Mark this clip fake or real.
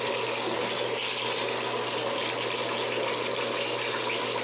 real